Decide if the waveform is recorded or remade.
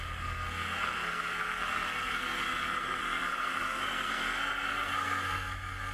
remade